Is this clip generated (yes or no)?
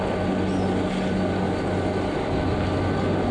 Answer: no